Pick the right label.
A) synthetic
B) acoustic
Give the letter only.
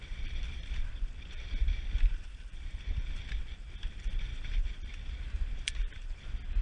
A